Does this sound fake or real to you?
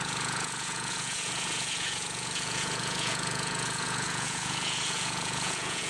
fake